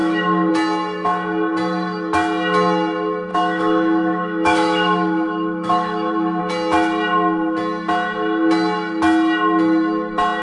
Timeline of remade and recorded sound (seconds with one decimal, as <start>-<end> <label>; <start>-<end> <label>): 0.0-0.5 remade; 0.5-3.3 recorded; 3.3-6.4 remade; 6.4-10.4 recorded